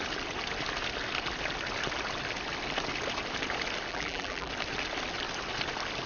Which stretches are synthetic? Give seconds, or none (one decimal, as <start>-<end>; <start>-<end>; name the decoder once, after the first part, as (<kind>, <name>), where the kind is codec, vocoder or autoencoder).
3.9-4.5 (vocoder, BigVGAN v2)